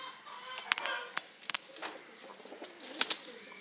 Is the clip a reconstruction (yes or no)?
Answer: no